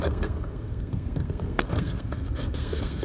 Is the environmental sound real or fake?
fake